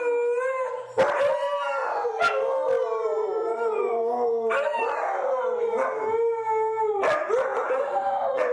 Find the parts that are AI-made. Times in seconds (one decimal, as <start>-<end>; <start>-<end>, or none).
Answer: 1.8-2.3; 3.2-4.0; 7.5-8.5